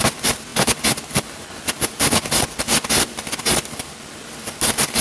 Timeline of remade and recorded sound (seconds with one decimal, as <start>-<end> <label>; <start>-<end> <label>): 0.0-5.0 recorded